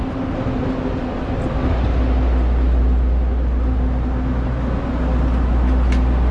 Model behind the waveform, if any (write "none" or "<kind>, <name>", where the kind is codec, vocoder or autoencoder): none